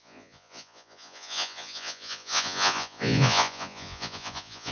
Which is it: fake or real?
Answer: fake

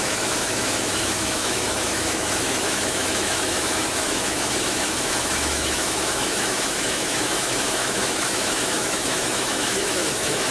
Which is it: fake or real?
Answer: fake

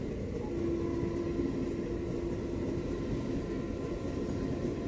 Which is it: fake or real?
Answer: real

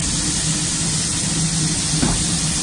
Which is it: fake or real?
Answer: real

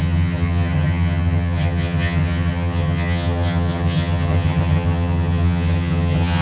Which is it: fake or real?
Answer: fake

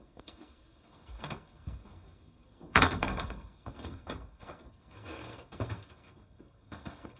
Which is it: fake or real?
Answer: fake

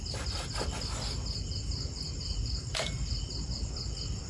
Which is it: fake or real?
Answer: fake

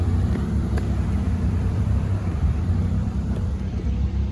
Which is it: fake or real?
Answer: fake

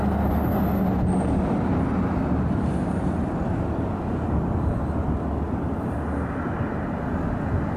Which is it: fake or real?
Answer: real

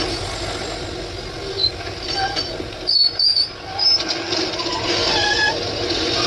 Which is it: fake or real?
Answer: real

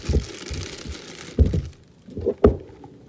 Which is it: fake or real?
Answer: real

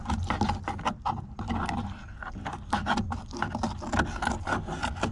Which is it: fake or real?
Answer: real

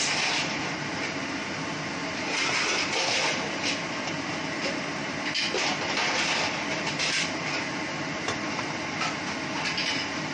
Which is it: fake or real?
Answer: real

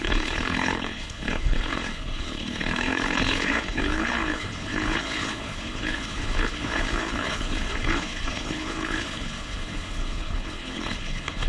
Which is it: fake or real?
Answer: fake